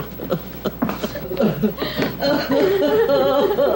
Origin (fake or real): real